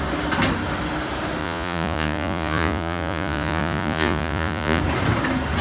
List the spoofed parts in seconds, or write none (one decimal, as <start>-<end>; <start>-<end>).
1.4-4.8